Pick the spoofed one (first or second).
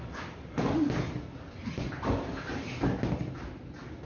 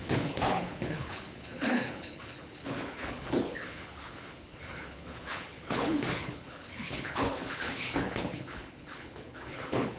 second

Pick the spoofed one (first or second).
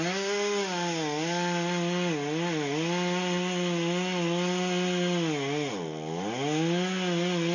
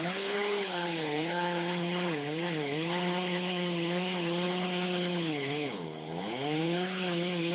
second